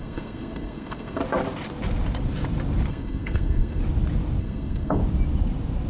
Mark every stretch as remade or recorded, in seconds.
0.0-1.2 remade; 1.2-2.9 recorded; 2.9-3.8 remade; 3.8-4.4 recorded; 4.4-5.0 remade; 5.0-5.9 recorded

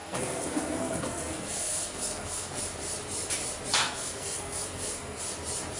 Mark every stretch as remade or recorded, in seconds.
0.0-2.6 remade; 2.6-3.8 recorded; 3.8-5.2 remade; 5.2-5.8 recorded

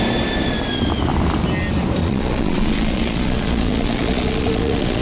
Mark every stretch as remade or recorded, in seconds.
0.0-2.0 recorded; 2.0-5.0 remade

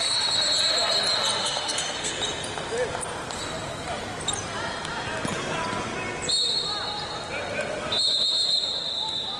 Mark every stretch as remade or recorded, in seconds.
0.0-1.4 recorded; 1.4-2.1 remade; 2.1-9.4 recorded

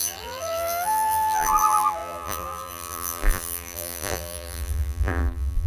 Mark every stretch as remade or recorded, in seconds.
0.0-5.7 remade

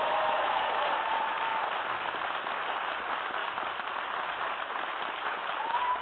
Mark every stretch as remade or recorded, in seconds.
0.0-1.5 remade; 1.5-2.7 recorded; 2.7-3.4 remade; 3.4-3.9 recorded; 3.9-6.0 remade

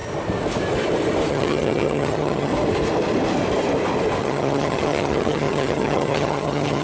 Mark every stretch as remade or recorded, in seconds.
0.0-1.3 recorded; 1.3-2.5 remade; 2.5-4.2 recorded; 4.2-6.8 remade